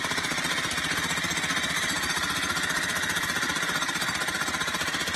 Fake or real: real